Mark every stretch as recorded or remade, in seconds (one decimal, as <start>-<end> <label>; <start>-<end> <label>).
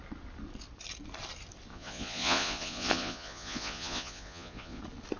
0.0-1.7 recorded; 1.7-4.8 remade; 4.8-5.2 recorded